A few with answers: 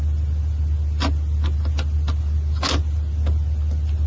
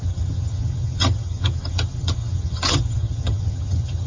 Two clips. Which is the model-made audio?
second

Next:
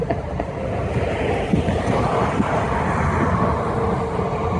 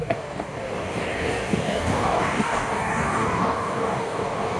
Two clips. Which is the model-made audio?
second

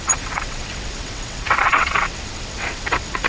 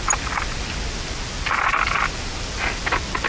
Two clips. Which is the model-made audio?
first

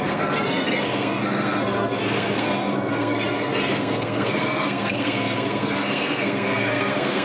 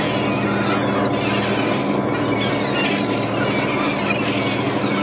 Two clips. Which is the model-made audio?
first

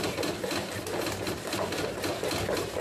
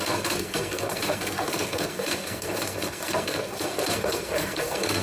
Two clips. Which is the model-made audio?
second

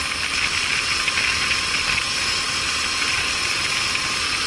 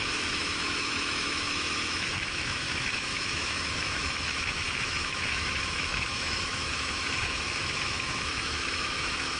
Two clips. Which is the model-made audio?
second